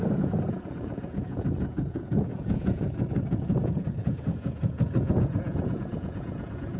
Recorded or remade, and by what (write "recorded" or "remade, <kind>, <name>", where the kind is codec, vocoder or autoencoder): remade, vocoder, Vocos